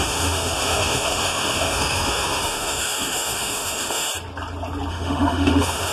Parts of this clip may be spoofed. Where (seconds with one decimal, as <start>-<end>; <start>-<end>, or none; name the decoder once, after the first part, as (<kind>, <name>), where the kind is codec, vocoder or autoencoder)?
0.0-4.1 (autoencoder, DAC-VAE); 4.9-5.9